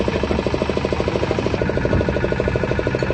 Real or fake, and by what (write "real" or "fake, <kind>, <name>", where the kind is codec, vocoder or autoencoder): real